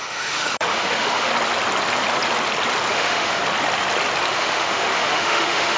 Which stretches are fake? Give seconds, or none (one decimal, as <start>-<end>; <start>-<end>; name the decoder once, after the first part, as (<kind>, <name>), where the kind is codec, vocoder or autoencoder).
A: 0.0-1.3 (autoencoder, DAC-VAE); 2.9-3.4; 4.3-5.8